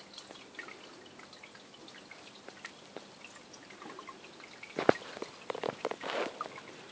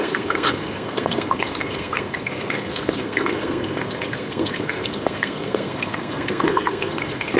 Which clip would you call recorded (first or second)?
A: first